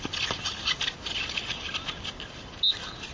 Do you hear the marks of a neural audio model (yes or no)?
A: no